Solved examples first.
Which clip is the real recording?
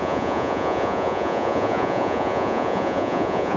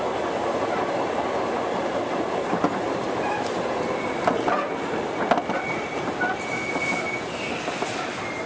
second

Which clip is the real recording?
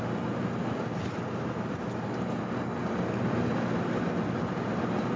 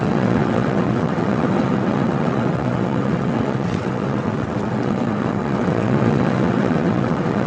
first